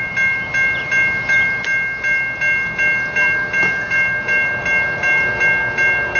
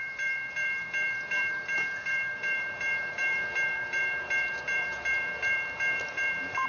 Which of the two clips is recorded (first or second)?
first